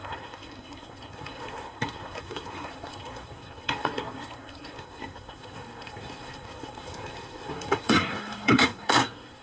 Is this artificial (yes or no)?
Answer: yes